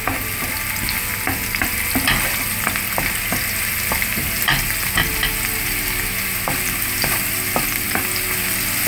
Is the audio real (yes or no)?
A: yes